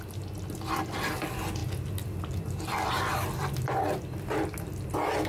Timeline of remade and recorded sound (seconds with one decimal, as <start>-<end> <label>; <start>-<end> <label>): 0.0-5.3 recorded

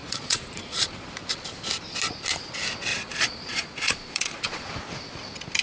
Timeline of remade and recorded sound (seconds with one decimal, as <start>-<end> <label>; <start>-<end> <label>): 0.0-1.1 remade; 1.1-2.9 recorded; 2.9-4.7 remade; 4.7-5.6 recorded

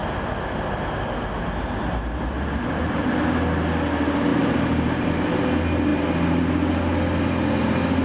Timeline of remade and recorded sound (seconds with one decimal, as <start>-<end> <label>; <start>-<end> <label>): 0.0-4.3 recorded; 4.3-5.1 remade; 5.1-8.0 recorded

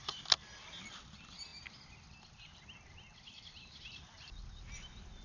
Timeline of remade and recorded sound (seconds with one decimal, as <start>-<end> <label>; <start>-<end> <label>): 0.0-5.2 recorded

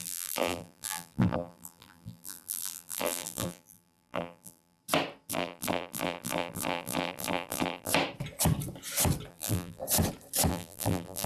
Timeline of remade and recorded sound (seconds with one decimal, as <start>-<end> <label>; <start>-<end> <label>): 0.0-4.8 remade; 4.8-5.3 recorded; 5.3-7.9 remade; 7.9-9.3 recorded; 9.3-9.8 remade; 9.8-10.5 recorded; 10.5-11.3 remade

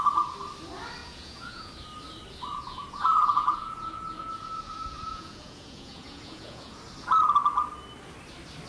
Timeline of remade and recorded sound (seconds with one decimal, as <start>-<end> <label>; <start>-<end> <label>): 0.0-1.0 recorded; 1.0-1.7 remade; 1.7-2.5 recorded; 2.5-6.8 remade; 6.8-8.7 recorded